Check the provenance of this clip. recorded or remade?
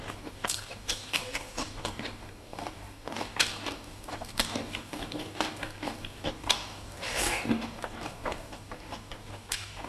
remade